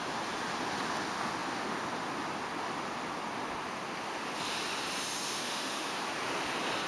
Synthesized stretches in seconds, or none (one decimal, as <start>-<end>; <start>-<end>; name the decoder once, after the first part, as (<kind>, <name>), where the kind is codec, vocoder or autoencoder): 5.4-5.9 (autoencoder, DAC-VAE)